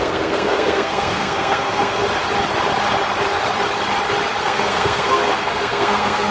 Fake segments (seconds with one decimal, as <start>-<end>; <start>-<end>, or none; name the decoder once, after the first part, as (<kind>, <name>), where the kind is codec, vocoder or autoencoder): 0.0-2.0 (codec, SNAC); 4.4-6.3